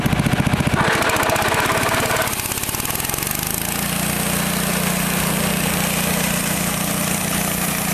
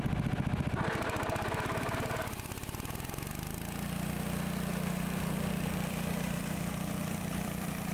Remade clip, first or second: second